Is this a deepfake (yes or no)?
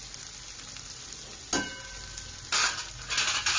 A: no